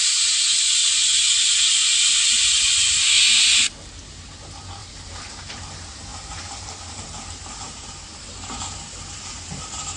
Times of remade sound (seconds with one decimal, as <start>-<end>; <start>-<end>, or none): 4.8-5.5; 6.1-8.1